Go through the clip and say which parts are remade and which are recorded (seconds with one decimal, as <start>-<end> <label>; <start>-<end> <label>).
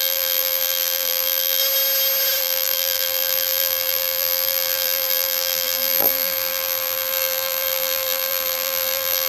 0.0-1.6 remade; 1.6-2.4 recorded; 2.4-9.3 remade